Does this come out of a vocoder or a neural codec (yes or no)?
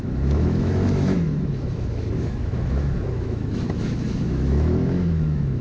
yes